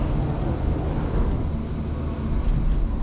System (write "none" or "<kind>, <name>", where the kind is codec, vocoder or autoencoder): none